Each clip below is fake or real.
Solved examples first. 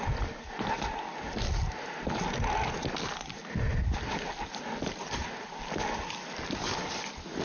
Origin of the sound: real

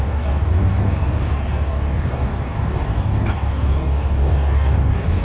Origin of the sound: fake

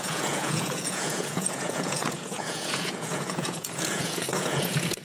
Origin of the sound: fake